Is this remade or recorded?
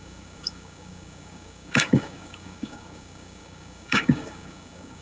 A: remade